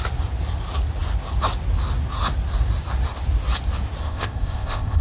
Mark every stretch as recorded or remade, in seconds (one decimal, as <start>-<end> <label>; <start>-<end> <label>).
0.0-4.0 recorded; 4.0-5.0 remade